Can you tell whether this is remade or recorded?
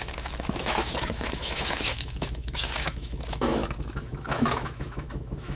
remade